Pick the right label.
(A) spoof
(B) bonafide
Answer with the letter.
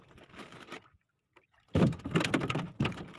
B